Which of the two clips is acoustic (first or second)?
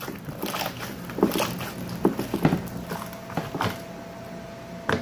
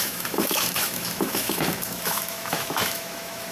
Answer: first